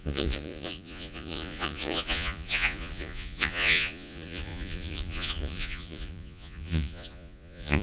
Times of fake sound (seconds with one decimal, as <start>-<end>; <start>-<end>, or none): 0.0-7.8